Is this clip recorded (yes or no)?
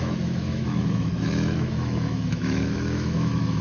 no